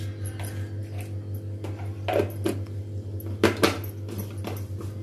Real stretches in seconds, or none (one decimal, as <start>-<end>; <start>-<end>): 0.0-5.0